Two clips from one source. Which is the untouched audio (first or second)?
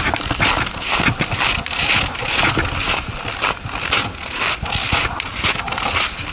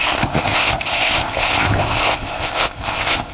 first